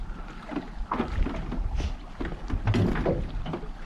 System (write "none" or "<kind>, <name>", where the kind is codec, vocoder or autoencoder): none